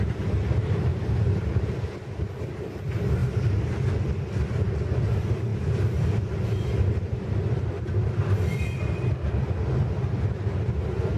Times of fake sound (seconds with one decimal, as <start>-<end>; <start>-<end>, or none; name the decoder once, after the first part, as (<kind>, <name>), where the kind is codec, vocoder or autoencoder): 0.9-1.6 (vocoder, BigVGAN v2); 5.5-9.4